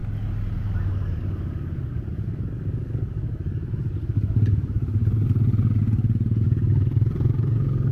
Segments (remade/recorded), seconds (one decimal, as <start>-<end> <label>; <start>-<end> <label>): 0.0-0.6 recorded; 0.6-5.0 remade; 5.0-6.4 recorded; 6.4-7.9 remade